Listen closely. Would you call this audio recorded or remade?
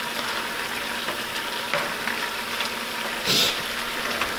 recorded